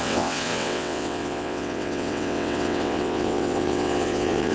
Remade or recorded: remade